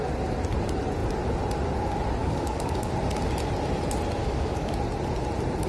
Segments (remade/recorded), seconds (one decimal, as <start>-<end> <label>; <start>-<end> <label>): 0.0-2.2 recorded; 2.2-2.9 remade; 2.9-4.2 recorded; 4.2-4.7 remade; 4.7-5.7 recorded